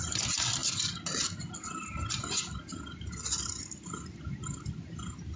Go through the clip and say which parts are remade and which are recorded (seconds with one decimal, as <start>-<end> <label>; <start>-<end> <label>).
0.0-5.4 recorded